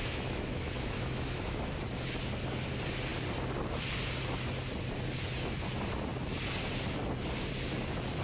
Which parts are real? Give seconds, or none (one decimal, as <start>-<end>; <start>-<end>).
1.7-8.2

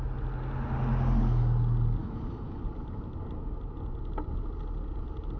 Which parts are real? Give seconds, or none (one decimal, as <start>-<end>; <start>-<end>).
0.0-2.0; 2.6-5.4

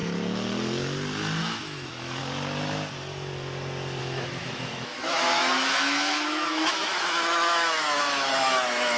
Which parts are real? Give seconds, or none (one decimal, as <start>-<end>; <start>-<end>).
0.0-1.4; 2.2-4.0

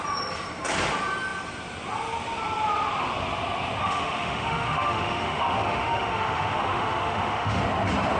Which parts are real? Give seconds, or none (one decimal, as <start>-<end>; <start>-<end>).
0.0-3.8; 7.6-8.2

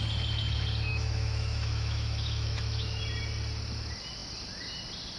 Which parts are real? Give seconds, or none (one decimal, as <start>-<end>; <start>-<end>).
0.0-0.9; 3.0-5.2